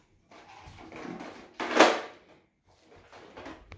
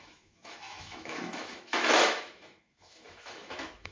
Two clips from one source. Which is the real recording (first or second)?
first